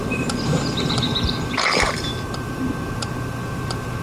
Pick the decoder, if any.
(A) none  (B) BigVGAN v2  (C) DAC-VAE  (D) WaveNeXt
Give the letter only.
B